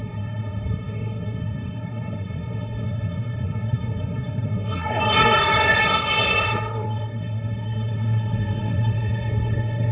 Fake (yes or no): yes